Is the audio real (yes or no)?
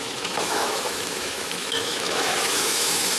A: no